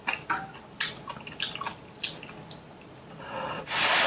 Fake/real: real